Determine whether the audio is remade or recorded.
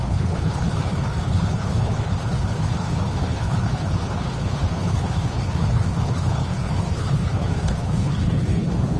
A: remade